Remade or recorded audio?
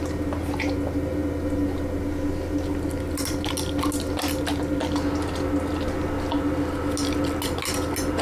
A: recorded